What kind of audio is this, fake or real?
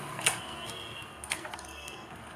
fake